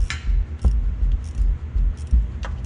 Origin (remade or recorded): recorded